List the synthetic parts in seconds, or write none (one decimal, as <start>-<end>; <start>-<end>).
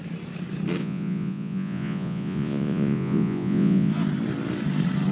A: 0.8-3.9